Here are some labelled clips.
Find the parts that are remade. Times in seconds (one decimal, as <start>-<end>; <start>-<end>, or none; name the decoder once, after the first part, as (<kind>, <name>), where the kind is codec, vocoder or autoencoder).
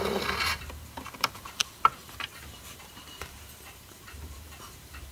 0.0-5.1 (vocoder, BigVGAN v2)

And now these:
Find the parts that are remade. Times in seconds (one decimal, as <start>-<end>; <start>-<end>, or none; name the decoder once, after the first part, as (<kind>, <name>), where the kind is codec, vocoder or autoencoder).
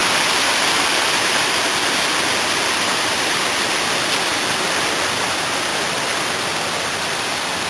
2.9-4.3 (vocoder, BigVGAN v2); 5.2-5.7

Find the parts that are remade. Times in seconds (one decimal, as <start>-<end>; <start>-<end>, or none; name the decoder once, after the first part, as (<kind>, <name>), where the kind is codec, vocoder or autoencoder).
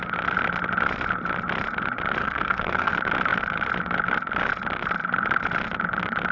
2.2-2.9 (codec, SNAC)